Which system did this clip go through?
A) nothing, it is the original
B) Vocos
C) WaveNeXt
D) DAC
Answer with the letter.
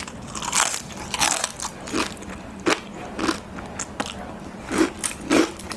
A